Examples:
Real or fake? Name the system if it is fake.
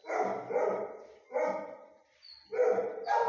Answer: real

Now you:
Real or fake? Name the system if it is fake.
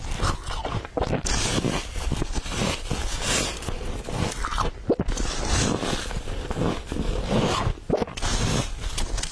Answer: real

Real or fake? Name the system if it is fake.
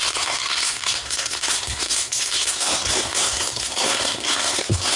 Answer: fake, codec, SNAC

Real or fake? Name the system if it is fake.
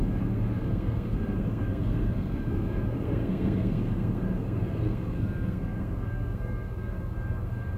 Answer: fake, codec, SNAC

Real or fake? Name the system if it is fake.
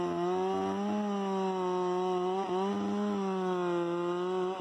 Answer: real